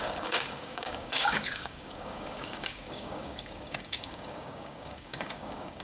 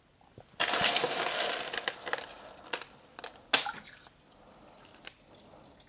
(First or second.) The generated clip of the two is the first